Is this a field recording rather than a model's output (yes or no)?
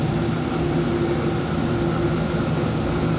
yes